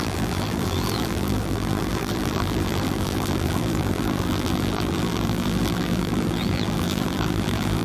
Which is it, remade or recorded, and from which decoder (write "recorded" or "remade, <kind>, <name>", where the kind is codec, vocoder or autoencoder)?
remade, vocoder, BigVGAN v2